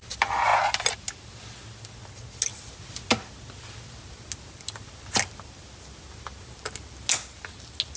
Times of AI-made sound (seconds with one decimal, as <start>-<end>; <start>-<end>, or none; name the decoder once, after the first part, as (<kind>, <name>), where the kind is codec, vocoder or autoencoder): none